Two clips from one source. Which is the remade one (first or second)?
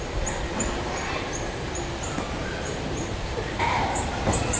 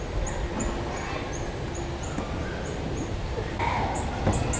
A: first